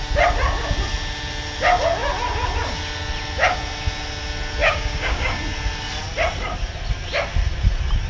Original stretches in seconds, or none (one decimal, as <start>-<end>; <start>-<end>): 0.0-4.6; 5.4-8.1